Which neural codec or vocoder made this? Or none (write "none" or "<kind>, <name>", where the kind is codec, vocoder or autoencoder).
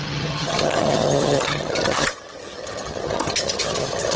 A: vocoder, HiFi-GAN